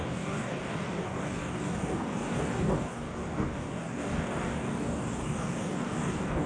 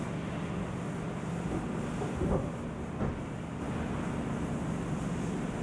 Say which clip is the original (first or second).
second